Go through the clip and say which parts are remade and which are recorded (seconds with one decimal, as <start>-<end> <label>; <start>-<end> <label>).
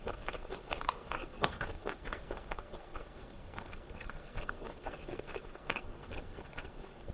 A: 0.0-7.1 remade